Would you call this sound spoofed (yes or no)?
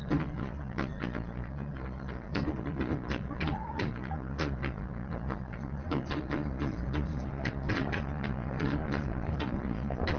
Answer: yes